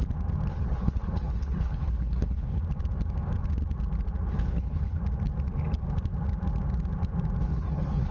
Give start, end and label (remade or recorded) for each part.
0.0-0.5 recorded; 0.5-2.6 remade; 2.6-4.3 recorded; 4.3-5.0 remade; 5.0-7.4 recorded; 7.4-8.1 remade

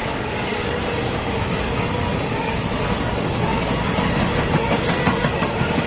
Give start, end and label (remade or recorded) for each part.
0.0-5.9 remade